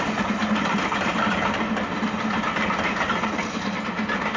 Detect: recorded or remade recorded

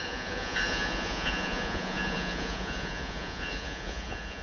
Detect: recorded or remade remade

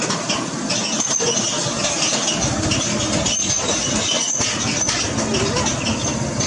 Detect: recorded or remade recorded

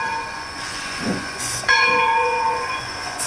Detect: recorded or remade remade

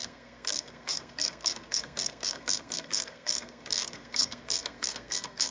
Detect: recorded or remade remade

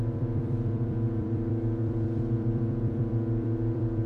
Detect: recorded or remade remade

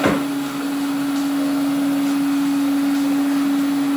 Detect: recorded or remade recorded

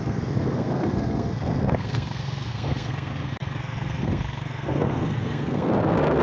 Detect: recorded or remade remade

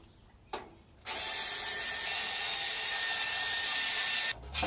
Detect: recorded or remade recorded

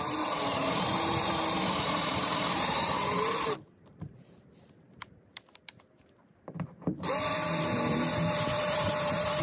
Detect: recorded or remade remade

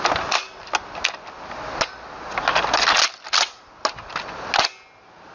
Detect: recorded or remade recorded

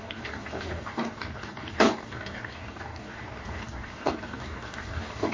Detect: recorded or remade remade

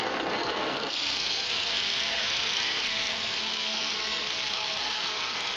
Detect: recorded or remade remade